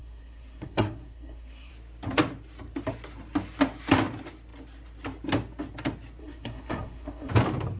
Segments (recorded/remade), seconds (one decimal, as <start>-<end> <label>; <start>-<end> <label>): 0.0-1.7 remade; 1.7-6.2 recorded; 6.2-7.3 remade; 7.3-7.8 recorded